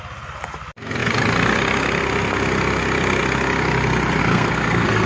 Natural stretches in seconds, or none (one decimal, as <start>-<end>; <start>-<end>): 0.0-4.2